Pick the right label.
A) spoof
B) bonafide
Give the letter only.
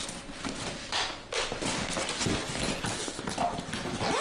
B